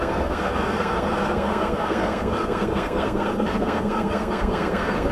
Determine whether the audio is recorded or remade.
remade